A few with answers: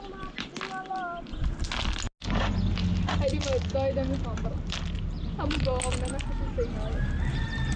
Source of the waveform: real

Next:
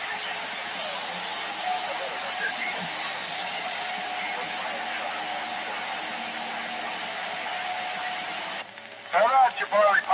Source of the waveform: real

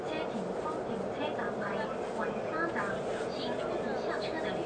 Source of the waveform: real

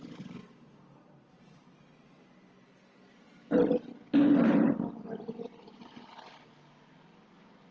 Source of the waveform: real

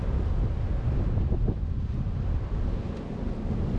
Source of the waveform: real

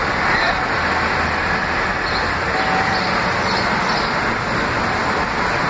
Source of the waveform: real